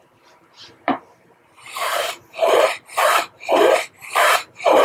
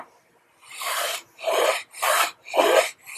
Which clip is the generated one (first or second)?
first